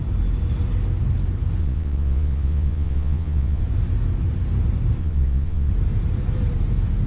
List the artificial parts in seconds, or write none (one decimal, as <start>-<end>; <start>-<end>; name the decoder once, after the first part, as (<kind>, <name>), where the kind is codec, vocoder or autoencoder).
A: 1.6-3.6 (vocoder, Vocos); 5.0-5.7